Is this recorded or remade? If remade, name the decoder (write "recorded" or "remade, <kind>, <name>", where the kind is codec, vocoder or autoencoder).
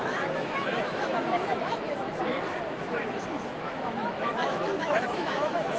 remade, autoencoder, DAC-VAE